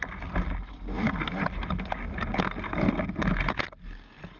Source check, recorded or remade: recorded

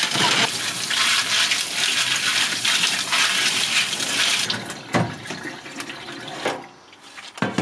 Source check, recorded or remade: recorded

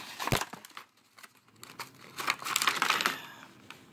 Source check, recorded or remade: recorded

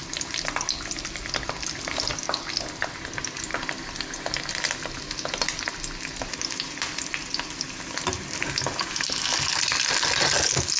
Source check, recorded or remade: recorded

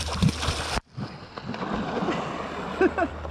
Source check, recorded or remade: recorded